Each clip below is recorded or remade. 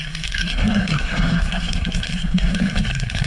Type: remade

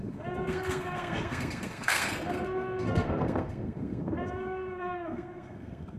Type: remade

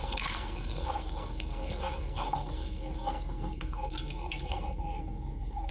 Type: remade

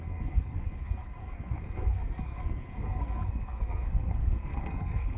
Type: remade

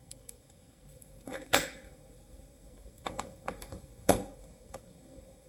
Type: remade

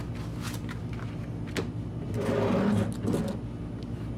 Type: recorded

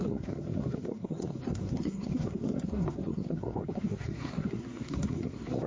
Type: remade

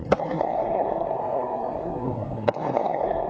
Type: remade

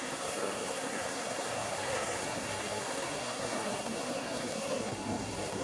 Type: remade